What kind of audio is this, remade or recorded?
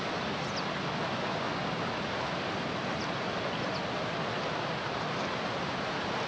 recorded